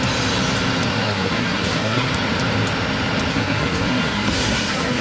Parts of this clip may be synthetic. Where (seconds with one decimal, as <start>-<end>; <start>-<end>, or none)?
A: 0.9-2.1; 3.3-5.0